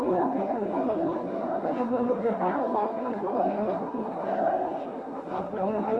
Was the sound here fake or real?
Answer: fake